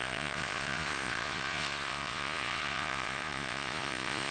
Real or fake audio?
fake